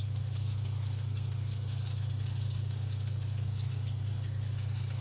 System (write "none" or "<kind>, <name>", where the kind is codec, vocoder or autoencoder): codec, SNAC